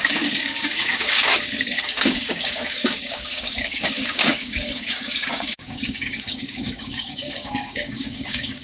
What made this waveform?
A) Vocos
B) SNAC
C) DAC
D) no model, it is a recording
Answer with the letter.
C